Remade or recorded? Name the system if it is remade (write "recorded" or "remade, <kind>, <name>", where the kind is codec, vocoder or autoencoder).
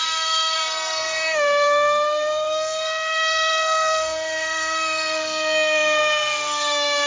remade, codec, SNAC